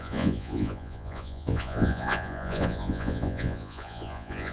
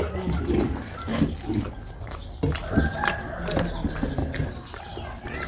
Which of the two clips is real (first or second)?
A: second